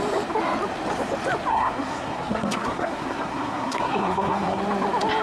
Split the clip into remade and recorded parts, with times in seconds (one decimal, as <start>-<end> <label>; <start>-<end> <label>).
0.0-1.5 recorded; 1.5-4.6 remade; 4.6-5.2 recorded